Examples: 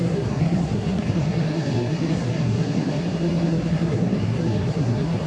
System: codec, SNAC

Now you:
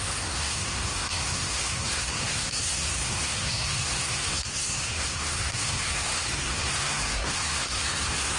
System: codec, SNAC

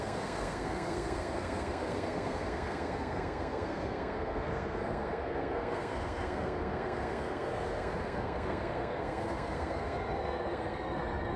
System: codec, SNAC